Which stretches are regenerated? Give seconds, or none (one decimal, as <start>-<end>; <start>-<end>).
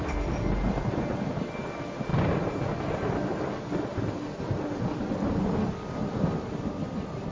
none